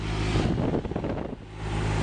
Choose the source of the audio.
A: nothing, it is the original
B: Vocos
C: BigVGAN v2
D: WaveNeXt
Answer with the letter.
A